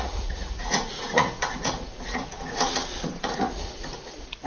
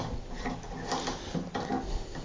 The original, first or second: second